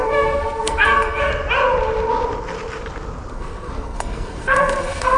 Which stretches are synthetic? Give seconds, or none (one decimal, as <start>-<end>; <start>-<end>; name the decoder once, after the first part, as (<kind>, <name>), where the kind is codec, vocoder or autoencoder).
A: 0.0-1.3 (codec, SNAC); 3.3-5.2